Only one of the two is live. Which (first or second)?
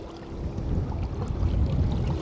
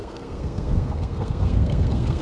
first